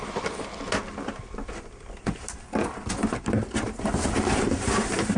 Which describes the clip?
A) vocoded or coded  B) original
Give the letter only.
B